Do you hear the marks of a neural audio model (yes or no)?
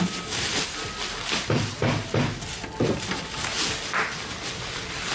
no